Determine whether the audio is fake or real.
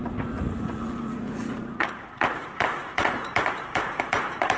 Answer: fake